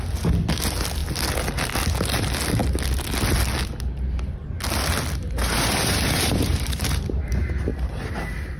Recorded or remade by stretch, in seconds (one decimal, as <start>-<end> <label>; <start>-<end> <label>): 0.0-5.2 recorded; 5.2-7.3 remade; 7.3-7.7 recorded; 7.7-8.2 remade; 8.2-8.6 recorded